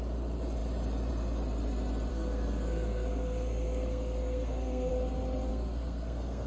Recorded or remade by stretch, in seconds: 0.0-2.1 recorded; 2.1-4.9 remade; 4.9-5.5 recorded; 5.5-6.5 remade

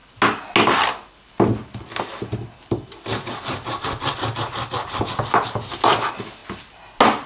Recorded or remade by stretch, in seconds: 0.0-7.3 recorded

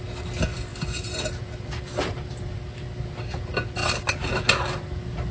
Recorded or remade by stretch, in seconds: 0.0-5.3 recorded